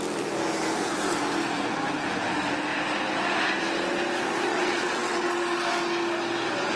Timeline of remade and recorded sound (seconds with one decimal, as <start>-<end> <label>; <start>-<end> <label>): 0.0-4.5 recorded; 4.5-5.3 remade; 5.3-6.8 recorded